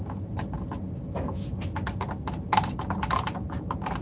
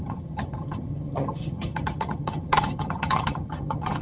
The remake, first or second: second